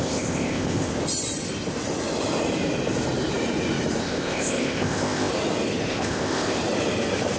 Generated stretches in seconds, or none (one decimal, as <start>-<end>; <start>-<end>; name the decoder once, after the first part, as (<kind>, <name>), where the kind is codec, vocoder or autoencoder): 0.0-0.9 (codec, ZipCodec); 4.0-5.3; 5.9-6.6